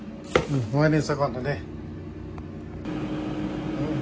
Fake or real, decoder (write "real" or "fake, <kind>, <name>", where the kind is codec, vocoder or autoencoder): real